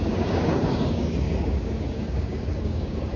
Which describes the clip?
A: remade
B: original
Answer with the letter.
A